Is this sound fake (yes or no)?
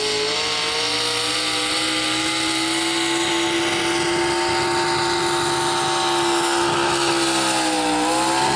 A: no